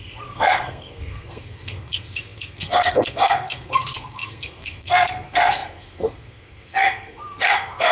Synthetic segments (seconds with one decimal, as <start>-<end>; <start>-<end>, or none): 0.0-7.9